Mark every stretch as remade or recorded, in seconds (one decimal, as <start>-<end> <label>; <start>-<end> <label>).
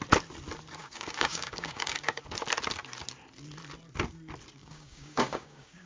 0.0-0.8 recorded; 0.8-2.2 remade; 2.2-4.6 recorded; 4.6-5.9 remade